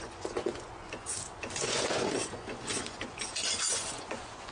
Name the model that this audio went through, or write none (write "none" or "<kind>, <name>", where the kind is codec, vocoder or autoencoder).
vocoder, Vocos